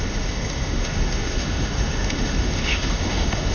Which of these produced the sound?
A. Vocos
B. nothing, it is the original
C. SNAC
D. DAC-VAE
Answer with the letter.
D